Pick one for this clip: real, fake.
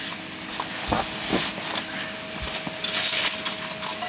real